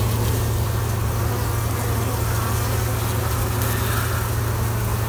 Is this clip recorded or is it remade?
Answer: recorded